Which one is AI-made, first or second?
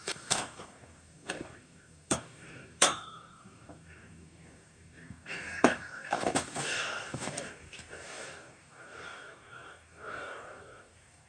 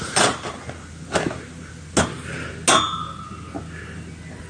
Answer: first